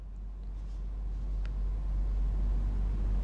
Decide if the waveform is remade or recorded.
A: recorded